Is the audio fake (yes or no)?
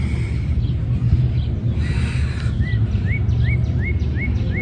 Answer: no